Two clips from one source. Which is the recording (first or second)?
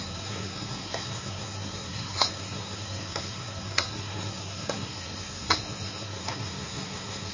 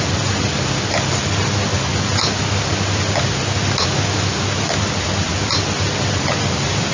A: second